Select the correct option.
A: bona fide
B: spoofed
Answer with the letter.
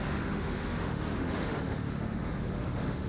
B